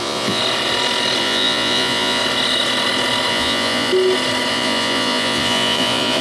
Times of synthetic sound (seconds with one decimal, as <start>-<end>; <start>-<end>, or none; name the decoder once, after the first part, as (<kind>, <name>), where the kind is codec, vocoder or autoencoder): 0.0-0.4 (vocoder, Vocos); 1.2-2.2; 3.3-3.9; 4.5-6.2